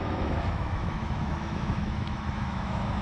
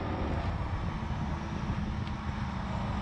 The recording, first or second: second